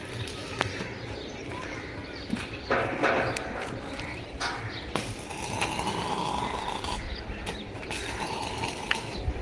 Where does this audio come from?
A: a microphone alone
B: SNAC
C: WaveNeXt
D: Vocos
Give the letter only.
A